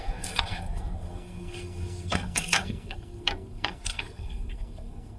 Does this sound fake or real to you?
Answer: fake